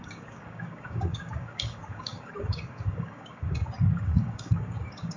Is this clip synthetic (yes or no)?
yes